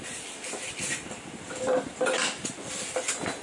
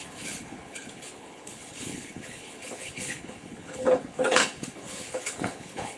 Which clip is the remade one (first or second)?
second